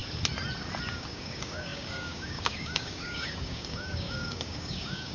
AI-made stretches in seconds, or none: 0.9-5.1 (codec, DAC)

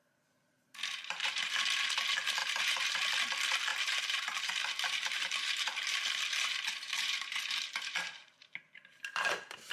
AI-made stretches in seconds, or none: 0.0-1.4 (vocoder, BigVGAN v2); 2.4-3.1; 3.7-8.6

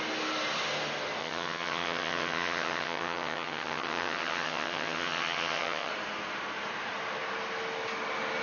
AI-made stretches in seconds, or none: 1.2-5.9 (vocoder, HiFi-GAN)

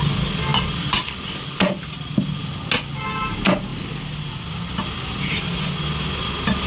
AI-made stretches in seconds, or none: none

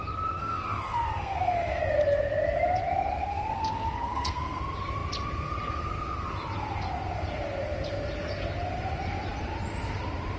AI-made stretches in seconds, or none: 0.4-1.8 (codec, SNAC); 3.3-4.6

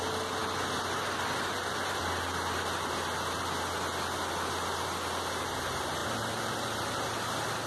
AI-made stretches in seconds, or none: 6.0-6.9 (vocoder, BigVGAN v2)

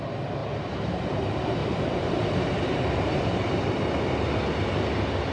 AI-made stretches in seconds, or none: 0.4-1.1 (vocoder, BigVGAN v2); 1.6-4.3

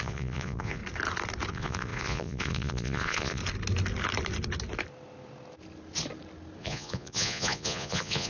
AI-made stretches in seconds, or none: 0.0-0.8 (vocoder, Vocos); 1.5-3.4; 6.6-8.3